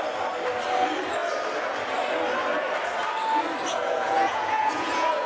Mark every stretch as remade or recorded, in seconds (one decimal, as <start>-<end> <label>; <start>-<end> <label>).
0.0-3.7 recorded; 3.7-5.3 remade